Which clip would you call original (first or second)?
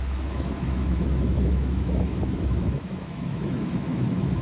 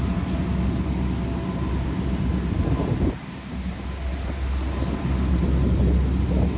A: second